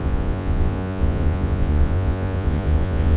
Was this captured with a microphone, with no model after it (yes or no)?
no